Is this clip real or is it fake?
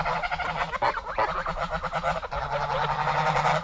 real